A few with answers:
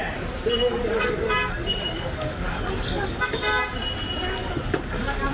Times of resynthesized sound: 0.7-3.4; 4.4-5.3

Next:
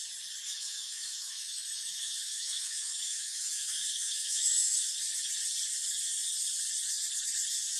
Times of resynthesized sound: 0.5-4.9

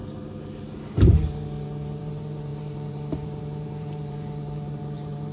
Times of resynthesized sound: 2.0-5.3

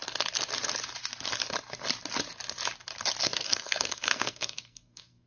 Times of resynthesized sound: 3.2-5.3

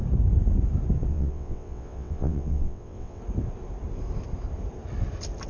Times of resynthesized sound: 1.1-3.2

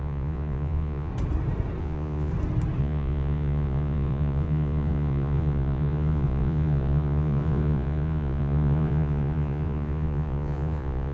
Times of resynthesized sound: 0.0-1.1; 1.8-2.3; 2.8-11.1

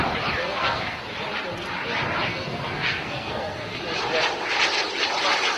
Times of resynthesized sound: 0.4-1.0; 2.3-3.8